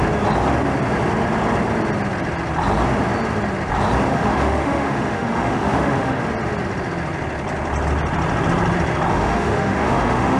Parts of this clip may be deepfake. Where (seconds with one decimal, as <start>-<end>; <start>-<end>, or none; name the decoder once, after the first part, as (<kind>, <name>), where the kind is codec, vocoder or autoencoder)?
4.1-6.2 (autoencoder, DAC-VAE); 9.1-10.4